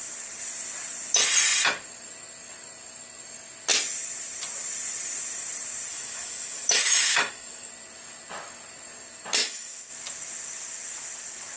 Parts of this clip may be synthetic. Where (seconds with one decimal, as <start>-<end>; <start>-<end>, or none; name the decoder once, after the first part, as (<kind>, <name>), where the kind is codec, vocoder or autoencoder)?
5.9-7.7 (autoencoder, DAC-VAE); 9.4-9.9